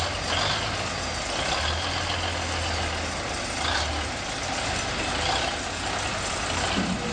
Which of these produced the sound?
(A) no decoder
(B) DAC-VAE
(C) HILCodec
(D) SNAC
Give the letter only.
A